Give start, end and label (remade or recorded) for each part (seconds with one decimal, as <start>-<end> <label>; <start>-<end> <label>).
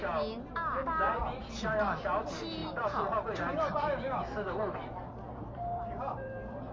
0.0-2.6 recorded; 2.6-6.7 remade